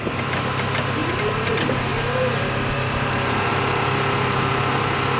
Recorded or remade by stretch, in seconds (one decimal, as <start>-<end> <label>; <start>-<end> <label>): 0.0-5.2 remade